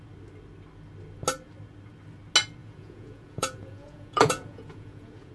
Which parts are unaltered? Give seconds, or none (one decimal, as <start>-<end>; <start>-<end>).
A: 0.0-2.6